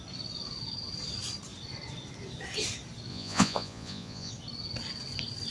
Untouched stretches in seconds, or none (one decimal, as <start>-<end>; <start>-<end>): 0.0-3.1; 4.3-5.5